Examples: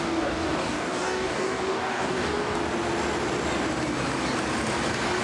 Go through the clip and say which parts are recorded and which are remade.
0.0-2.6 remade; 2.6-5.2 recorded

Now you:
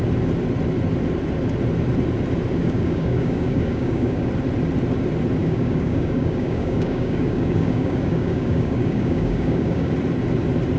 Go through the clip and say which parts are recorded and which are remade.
0.0-2.6 recorded; 2.6-4.3 remade; 4.3-5.4 recorded; 5.4-9.9 remade; 9.9-10.8 recorded

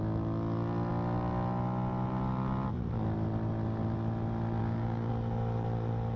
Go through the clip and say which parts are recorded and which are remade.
0.0-4.6 recorded; 4.6-5.1 remade; 5.1-6.2 recorded

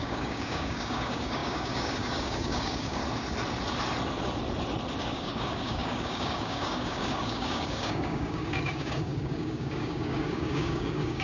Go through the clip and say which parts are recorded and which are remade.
0.0-3.0 remade; 3.0-5.0 recorded; 5.0-11.2 remade

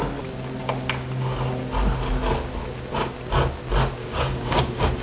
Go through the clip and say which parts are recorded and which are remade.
0.0-4.0 recorded; 4.0-4.6 remade; 4.6-5.0 recorded

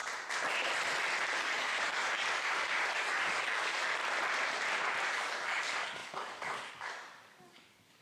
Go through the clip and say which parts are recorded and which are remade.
0.0-1.4 recorded; 1.4-4.0 remade; 4.0-5.1 recorded; 5.1-8.0 remade